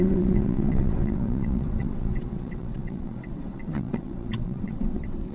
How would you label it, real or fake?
fake